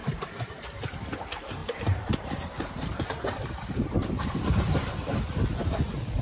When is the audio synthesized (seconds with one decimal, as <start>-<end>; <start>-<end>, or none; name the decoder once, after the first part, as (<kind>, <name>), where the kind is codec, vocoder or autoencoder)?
0.0-0.5 (vocoder, BigVGAN v2); 1.6-5.2

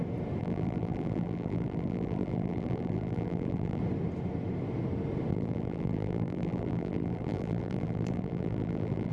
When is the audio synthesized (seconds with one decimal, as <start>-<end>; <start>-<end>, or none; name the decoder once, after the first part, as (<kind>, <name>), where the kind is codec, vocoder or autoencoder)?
0.4-3.8 (vocoder, BigVGAN v2); 5.3-9.1

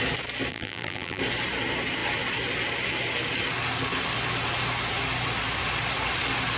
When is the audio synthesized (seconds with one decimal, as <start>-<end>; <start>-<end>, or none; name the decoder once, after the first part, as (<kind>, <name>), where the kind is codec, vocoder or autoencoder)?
0.5-1.2 (vocoder, BigVGAN v2)

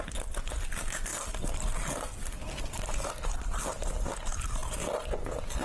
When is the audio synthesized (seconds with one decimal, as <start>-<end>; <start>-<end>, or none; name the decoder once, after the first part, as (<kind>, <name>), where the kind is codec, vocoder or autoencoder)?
4.6-5.1 (vocoder, BigVGAN v2)

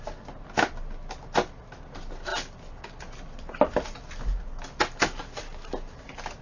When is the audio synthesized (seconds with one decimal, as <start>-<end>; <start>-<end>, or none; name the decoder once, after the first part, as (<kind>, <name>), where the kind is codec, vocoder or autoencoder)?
none

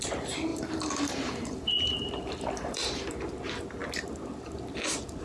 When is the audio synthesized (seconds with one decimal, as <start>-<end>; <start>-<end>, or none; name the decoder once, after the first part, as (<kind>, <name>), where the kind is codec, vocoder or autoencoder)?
0.5-3.2 (vocoder, BigVGAN v2)

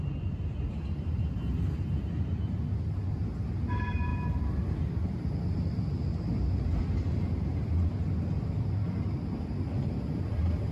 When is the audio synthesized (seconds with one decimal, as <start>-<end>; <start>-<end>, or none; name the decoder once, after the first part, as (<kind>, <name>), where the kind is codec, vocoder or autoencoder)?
4.1-6.8 (vocoder, BigVGAN v2)